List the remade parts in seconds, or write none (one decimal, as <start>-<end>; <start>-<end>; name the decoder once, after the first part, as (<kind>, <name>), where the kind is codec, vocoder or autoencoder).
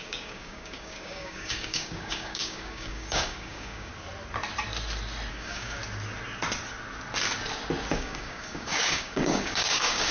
0.0-3.9 (codec, DAC); 5.3-5.8; 7.9-10.1